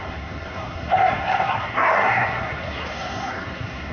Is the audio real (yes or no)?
no